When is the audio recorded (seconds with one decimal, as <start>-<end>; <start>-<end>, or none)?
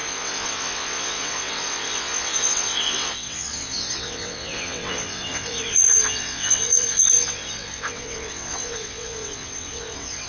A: none